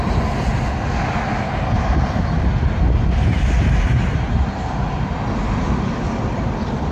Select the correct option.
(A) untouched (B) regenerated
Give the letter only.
A